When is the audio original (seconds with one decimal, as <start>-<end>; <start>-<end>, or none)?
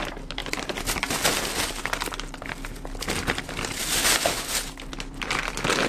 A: 0.0-0.4; 1.8-5.9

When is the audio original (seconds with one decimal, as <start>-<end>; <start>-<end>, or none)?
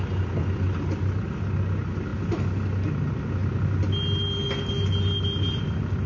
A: 0.0-6.1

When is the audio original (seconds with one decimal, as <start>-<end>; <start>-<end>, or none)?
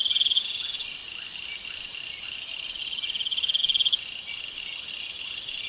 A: 0.0-5.7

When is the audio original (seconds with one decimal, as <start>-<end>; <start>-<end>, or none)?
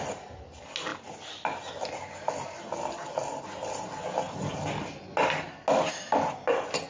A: 0.0-6.9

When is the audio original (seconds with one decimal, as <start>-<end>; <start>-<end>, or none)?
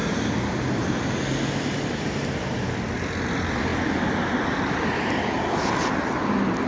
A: 0.0-6.7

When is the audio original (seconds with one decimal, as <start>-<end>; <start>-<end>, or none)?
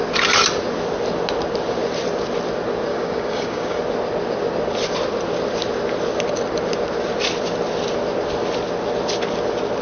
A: 0.0-2.9; 3.8-9.8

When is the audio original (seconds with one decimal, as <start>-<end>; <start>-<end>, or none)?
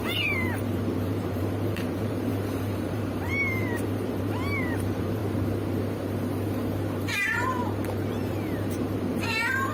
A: 5.2-8.1